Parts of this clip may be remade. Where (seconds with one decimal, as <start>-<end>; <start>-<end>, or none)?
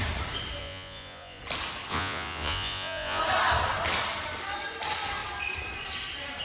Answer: 0.6-1.4; 1.9-3.2